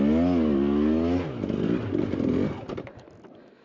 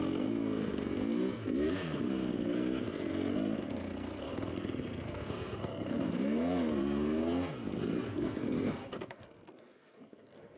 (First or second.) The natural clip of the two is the first